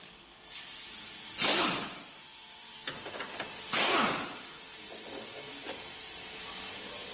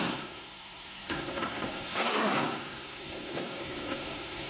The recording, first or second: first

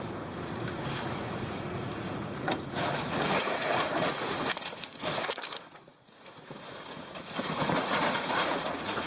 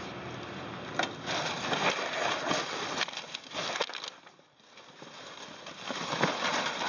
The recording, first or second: second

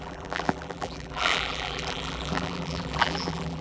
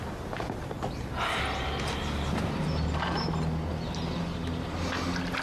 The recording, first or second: second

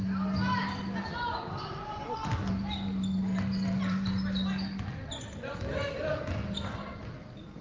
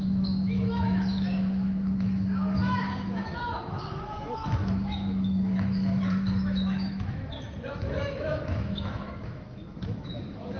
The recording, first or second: first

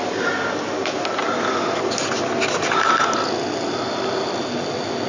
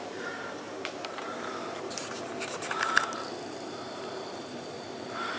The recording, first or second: first